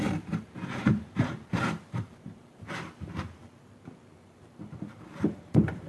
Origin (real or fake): fake